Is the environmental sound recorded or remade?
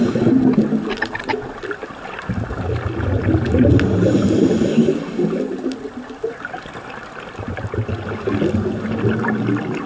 recorded